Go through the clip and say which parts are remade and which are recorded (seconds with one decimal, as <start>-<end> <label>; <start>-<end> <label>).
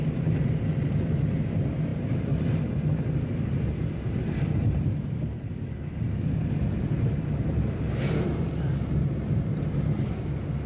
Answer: 0.0-10.7 recorded